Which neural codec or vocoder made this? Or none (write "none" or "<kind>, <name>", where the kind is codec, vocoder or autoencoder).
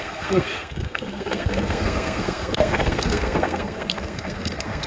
codec, SNAC